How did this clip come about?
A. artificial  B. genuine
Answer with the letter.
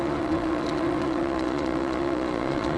A